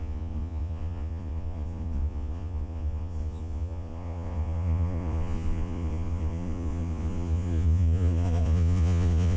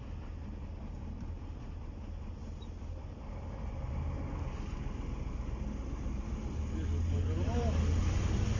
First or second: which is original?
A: second